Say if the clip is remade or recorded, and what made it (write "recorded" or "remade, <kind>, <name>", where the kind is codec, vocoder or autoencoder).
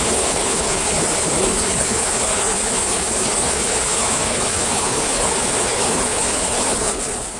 remade, codec, HILCodec